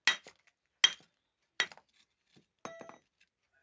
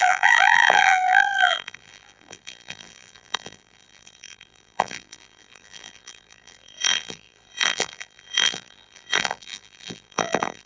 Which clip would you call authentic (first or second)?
first